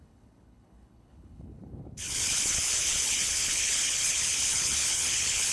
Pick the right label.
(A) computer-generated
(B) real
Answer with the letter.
A